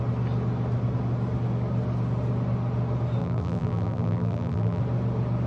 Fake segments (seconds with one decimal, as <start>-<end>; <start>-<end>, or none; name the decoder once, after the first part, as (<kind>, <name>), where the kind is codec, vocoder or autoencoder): 3.2-4.8 (vocoder, BigVGAN v2)